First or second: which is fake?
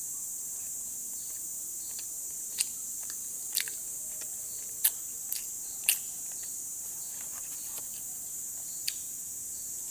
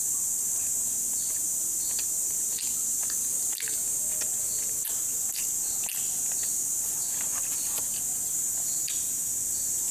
first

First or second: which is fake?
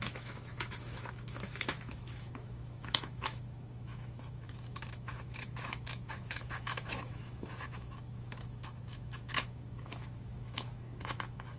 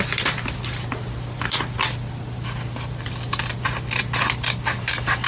first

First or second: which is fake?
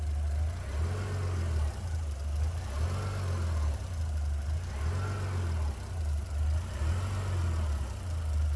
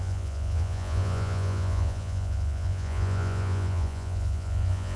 second